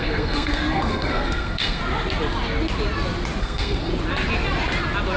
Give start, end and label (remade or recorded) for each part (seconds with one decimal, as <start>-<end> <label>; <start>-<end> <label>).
0.0-1.8 remade; 1.8-3.4 recorded; 3.4-3.9 remade; 3.9-5.2 recorded